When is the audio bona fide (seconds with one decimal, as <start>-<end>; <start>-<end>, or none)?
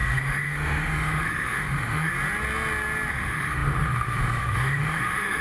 2.1-3.1